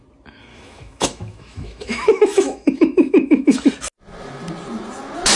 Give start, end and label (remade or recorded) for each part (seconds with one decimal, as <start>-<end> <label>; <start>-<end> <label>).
0.0-0.5 recorded; 0.5-3.7 remade; 3.7-5.4 recorded